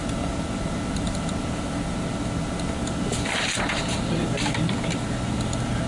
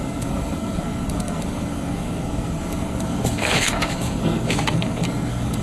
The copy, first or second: second